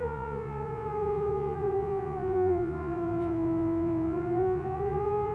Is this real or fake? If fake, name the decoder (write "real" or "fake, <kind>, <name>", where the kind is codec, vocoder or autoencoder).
fake, vocoder, Vocos